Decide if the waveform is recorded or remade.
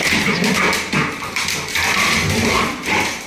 recorded